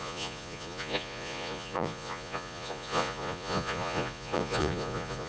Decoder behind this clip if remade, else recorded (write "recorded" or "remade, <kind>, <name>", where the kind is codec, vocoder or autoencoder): remade, vocoder, Vocos